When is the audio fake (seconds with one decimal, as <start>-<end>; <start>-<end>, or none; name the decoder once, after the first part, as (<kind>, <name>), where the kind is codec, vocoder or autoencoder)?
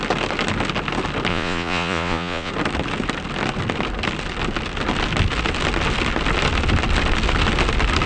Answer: 1.3-2.5 (vocoder, Vocos)